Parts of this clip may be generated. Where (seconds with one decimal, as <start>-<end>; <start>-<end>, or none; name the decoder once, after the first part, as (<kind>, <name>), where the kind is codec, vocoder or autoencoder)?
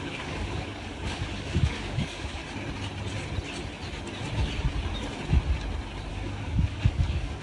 0.0-2.4 (codec, DAC); 6.1-7.4